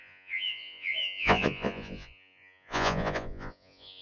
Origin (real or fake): fake